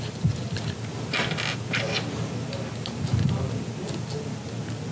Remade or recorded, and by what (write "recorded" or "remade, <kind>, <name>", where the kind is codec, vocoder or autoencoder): recorded